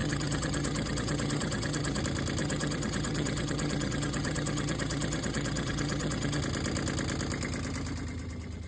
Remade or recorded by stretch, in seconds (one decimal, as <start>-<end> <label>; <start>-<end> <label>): 0.0-2.0 remade; 2.0-2.4 recorded; 2.4-6.4 remade; 6.4-8.7 recorded